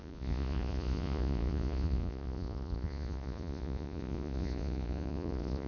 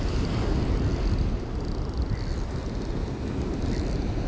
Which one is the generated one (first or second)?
first